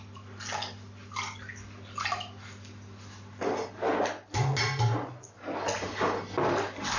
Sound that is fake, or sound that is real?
real